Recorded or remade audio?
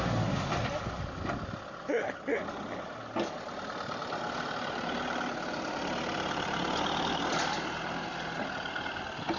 recorded